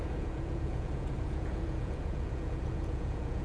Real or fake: fake